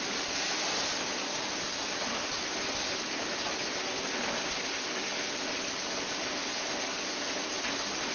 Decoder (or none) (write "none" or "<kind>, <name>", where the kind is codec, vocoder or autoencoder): none